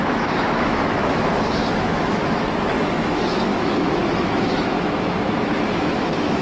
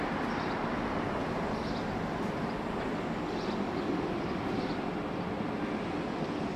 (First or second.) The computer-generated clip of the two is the first